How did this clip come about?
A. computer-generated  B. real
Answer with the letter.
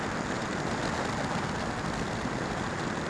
B